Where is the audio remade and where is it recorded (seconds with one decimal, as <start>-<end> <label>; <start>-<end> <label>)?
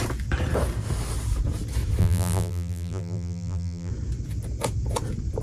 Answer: 0.0-2.0 recorded; 2.0-3.9 remade; 3.9-5.4 recorded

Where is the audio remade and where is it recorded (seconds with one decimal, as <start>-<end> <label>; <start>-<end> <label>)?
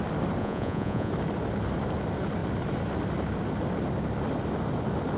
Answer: 0.0-0.4 recorded; 0.4-1.1 remade; 1.1-5.2 recorded